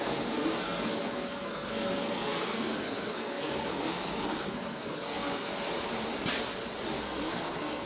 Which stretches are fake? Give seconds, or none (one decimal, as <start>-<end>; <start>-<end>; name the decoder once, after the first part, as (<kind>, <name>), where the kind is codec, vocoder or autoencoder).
0.0-5.5 (codec, SNAC); 6.9-7.9